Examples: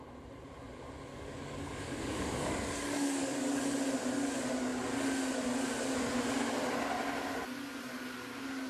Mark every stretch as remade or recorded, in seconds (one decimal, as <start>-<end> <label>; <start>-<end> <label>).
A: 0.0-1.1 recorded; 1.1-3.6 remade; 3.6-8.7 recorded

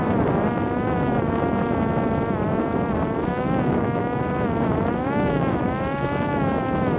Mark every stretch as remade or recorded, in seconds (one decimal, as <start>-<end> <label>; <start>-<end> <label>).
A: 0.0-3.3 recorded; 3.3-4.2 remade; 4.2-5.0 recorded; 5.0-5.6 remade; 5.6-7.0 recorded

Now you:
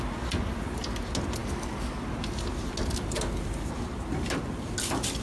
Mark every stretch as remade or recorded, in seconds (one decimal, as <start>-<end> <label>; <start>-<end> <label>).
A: 0.0-1.4 recorded; 1.4-2.0 remade; 2.0-5.2 recorded

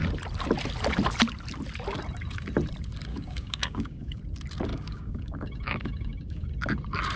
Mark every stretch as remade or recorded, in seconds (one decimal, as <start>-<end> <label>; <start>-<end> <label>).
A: 0.0-3.1 recorded; 3.1-4.2 remade; 4.2-4.7 recorded; 4.7-6.5 remade; 6.5-7.2 recorded

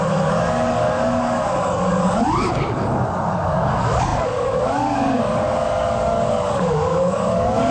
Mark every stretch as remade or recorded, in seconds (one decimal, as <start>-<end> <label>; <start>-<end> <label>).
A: 0.0-7.7 remade

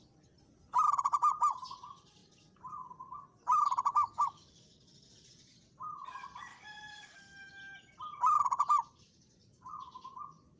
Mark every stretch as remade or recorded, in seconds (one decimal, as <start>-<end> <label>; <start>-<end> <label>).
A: 0.0-3.9 recorded; 3.9-4.8 remade; 4.8-6.5 recorded; 6.5-7.5 remade; 7.5-10.6 recorded

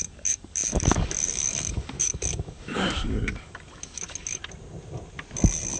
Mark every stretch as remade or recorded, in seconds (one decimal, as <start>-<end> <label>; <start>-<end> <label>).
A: 0.0-4.4 remade; 4.4-5.8 recorded